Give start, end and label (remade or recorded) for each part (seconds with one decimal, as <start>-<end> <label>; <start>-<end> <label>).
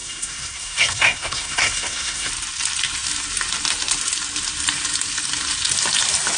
0.0-2.3 remade; 2.3-6.4 recorded